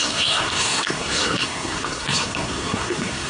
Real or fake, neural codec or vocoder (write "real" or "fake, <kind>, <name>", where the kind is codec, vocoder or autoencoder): fake, codec, SNAC